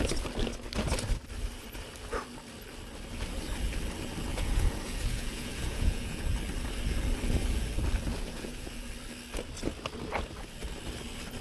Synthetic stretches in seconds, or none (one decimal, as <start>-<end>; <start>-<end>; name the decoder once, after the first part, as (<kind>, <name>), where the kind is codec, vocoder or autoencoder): 4.3-6.2 (vocoder, Vocos); 8.1-8.9